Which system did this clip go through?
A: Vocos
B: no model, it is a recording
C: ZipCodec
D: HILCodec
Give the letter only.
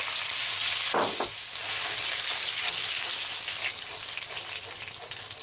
B